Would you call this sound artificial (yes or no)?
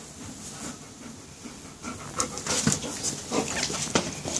no